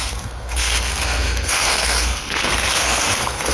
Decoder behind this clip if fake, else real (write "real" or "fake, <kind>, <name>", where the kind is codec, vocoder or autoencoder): fake, codec, SNAC